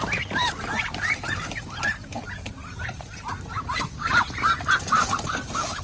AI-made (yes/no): yes